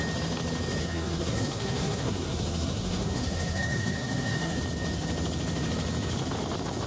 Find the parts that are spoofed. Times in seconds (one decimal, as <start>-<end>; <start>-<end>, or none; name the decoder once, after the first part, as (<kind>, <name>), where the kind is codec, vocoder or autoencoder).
0.8-4.6 (codec, SNAC)